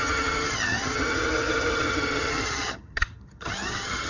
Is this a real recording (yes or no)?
no